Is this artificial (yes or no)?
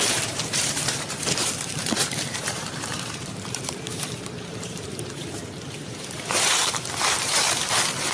yes